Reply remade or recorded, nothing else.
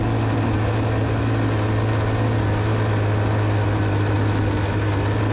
recorded